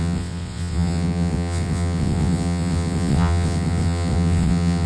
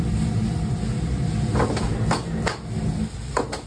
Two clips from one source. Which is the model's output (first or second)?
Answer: first